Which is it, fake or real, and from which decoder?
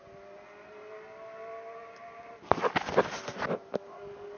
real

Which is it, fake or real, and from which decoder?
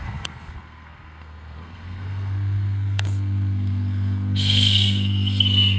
fake, codec, SNAC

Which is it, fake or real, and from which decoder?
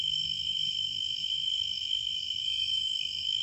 fake, codec, SNAC